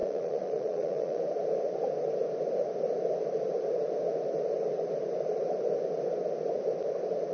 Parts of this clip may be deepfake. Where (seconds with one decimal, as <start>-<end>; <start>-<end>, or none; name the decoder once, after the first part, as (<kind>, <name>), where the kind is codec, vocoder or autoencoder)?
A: 0.0-1.2 (vocoder, Vocos)

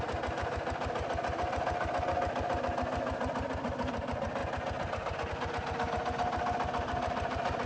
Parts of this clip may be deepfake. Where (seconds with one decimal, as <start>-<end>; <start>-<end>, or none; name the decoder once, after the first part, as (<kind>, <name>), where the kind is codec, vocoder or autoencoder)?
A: none

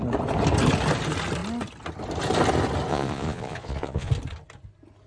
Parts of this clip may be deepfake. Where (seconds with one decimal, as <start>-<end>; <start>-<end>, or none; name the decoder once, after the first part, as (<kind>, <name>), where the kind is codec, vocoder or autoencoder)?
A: 2.9-4.1 (vocoder, Vocos)

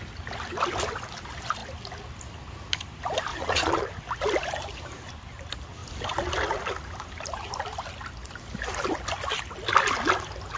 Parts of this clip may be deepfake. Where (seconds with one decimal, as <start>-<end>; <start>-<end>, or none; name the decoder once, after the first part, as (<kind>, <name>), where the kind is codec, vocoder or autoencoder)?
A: 3.3-3.9 (vocoder, Vocos)

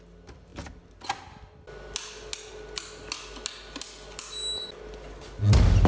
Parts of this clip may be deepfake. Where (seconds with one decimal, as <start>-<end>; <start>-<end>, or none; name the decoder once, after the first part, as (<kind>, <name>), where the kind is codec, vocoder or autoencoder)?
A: none

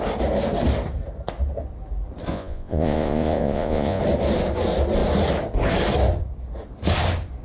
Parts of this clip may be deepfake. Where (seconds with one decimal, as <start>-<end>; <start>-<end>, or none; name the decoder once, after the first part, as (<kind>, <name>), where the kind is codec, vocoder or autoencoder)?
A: 2.3-4.0 (vocoder, Vocos)